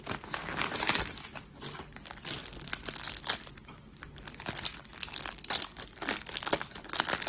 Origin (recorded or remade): recorded